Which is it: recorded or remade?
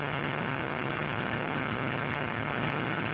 remade